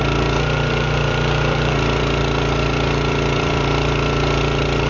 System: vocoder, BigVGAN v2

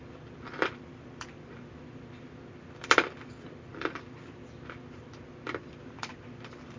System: vocoder, BigVGAN v2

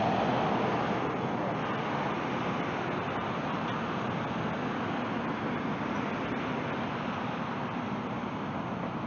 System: none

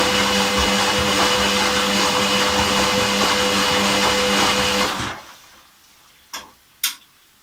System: none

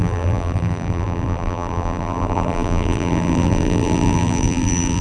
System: vocoder, BigVGAN v2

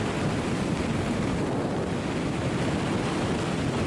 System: none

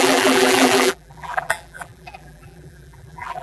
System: vocoder, BigVGAN v2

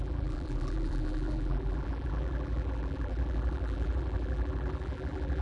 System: vocoder, BigVGAN v2